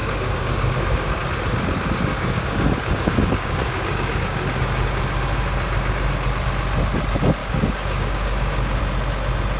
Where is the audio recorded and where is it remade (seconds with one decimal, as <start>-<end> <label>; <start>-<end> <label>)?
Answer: 0.0-1.2 remade; 1.2-2.1 recorded; 2.1-4.9 remade; 4.9-7.4 recorded; 7.4-8.8 remade; 8.8-9.6 recorded